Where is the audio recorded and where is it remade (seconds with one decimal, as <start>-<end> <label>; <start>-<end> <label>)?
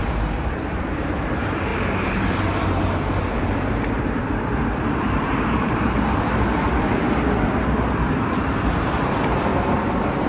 0.0-7.0 remade; 7.0-8.8 recorded; 8.8-9.5 remade; 9.5-10.3 recorded